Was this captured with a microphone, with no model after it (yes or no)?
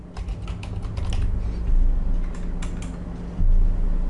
yes